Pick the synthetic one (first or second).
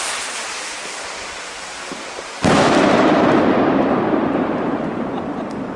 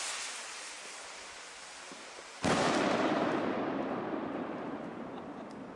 first